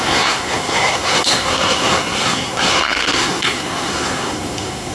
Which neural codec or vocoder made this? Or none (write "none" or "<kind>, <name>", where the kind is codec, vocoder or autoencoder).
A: codec, SNAC